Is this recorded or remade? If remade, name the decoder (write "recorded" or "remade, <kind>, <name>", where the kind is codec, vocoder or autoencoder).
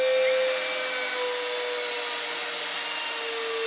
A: recorded